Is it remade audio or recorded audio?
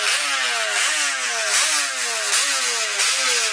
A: recorded